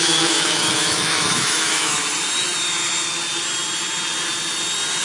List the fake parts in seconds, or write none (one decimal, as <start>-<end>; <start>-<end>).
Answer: 0.0-2.0